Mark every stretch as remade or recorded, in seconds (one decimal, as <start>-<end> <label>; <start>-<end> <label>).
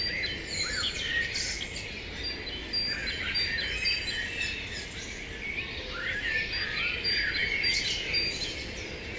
0.0-9.2 recorded